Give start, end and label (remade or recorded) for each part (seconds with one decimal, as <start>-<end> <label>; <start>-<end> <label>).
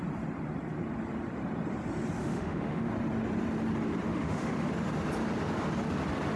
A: 0.0-2.2 recorded; 2.2-2.9 remade; 2.9-4.1 recorded; 4.1-4.7 remade; 4.7-6.4 recorded